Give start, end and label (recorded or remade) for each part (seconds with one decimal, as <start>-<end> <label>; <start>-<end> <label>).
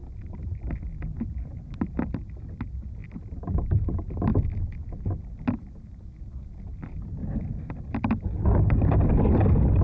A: 0.0-9.8 recorded